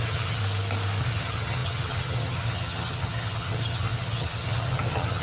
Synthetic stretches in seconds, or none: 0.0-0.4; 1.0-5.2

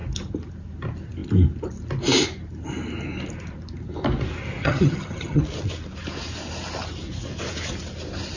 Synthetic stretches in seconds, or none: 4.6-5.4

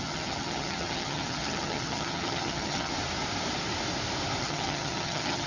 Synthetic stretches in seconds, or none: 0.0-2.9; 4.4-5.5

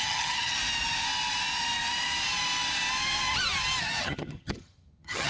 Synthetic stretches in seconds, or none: 0.0-0.6; 3.8-5.3